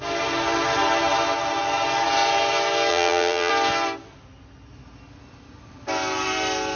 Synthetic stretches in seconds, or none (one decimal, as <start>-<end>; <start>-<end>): 2.9-3.5